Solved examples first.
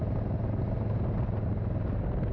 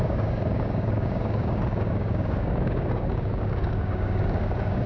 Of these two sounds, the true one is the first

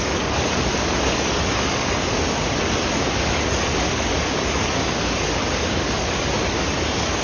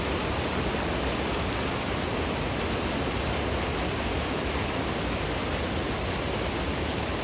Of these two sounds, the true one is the second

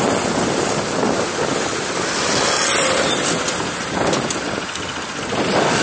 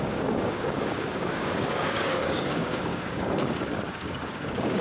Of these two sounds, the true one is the first